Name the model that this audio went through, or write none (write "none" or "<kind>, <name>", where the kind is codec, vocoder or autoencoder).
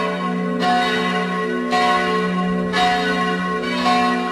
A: none